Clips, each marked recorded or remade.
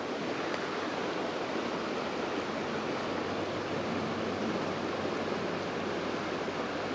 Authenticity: recorded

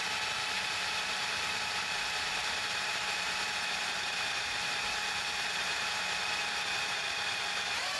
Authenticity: remade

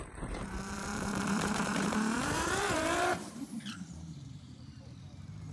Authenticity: remade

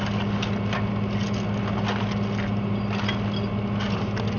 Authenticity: recorded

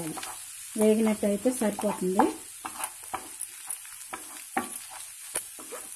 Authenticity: recorded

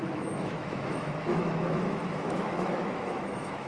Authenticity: remade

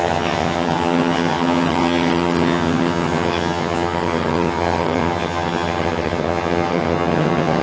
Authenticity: remade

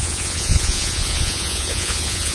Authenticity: remade